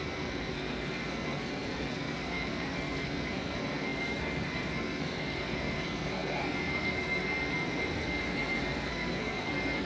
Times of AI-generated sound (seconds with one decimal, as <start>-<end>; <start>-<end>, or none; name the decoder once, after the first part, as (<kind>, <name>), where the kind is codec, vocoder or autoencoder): 0.0-9.9 (codec, SNAC)